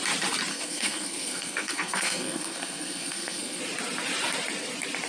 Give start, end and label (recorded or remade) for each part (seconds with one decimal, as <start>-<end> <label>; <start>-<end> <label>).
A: 0.0-0.5 recorded; 0.5-3.6 remade; 3.6-5.1 recorded